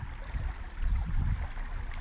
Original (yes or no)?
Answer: yes